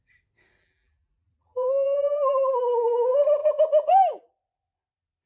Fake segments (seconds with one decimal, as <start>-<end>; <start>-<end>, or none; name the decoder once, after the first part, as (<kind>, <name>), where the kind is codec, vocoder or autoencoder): 0.6-2.6 (vocoder, BigVGAN v2); 3.4-4.3